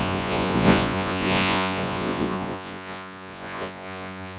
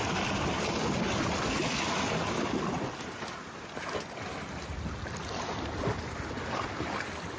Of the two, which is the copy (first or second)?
first